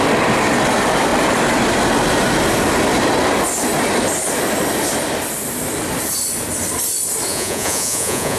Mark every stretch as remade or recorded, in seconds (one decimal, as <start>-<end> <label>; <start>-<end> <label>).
0.0-7.3 recorded; 7.3-8.4 remade